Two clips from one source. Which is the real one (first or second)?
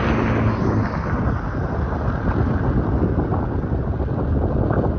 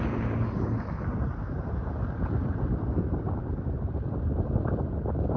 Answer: first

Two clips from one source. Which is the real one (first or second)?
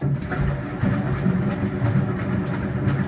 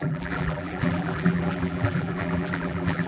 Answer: first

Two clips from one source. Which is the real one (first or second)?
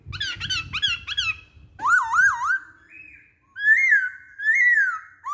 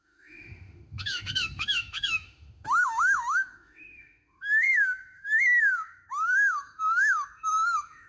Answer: first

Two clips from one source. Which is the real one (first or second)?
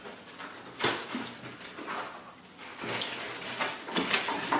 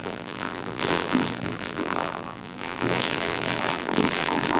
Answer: first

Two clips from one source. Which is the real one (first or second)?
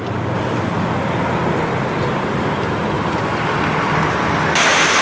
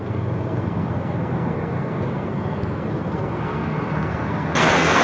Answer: first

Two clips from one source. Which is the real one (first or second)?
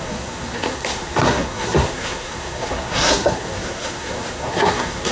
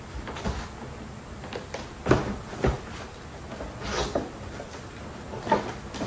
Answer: second